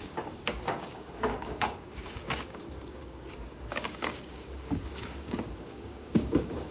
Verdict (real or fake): fake